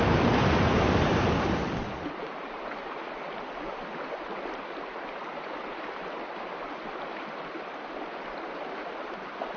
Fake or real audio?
real